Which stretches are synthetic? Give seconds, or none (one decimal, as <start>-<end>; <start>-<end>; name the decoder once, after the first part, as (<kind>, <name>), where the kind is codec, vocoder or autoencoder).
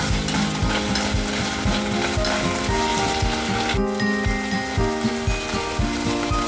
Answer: none